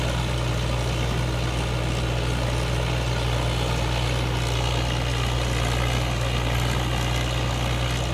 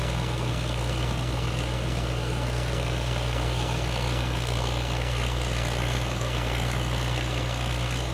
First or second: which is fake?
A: second